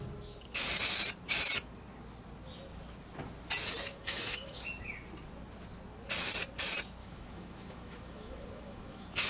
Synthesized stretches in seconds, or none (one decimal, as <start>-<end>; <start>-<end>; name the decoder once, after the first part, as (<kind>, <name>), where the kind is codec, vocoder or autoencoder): 3.9-4.6 (autoencoder, DAC-VAE); 7.0-9.3